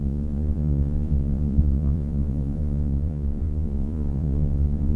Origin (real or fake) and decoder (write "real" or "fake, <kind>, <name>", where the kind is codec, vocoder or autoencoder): fake, vocoder, Vocos